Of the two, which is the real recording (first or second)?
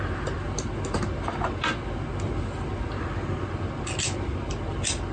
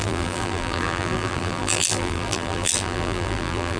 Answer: first